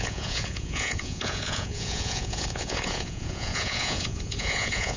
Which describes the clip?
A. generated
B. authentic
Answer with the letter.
A